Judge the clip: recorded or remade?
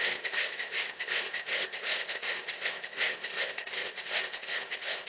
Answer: remade